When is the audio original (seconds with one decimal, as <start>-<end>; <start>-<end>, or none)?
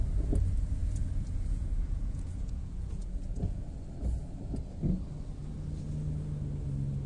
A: 0.0-0.8; 3.6-7.1